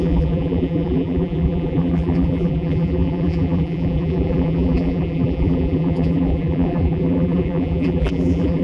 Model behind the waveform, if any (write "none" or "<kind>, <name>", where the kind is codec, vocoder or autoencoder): vocoder, BigVGAN v2